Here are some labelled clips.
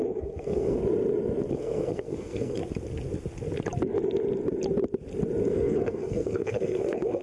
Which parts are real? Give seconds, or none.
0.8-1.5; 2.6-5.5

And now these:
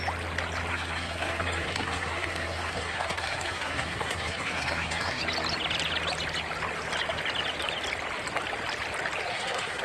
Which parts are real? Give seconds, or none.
0.0-0.7; 5.2-9.3

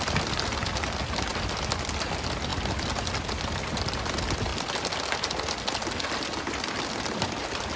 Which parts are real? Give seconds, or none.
0.0-7.8

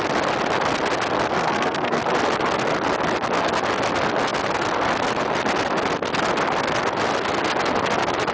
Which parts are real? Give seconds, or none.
0.0-1.4; 2.0-8.3

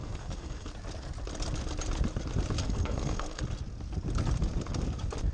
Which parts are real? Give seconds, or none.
0.7-2.6; 3.4-5.3

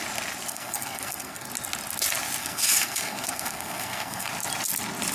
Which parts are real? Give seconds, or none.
0.0-0.5; 1.5-2.4; 4.3-5.1

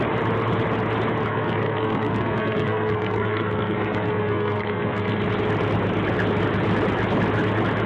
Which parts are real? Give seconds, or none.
0.0-1.3; 5.2-7.9